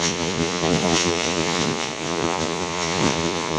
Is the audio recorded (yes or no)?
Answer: no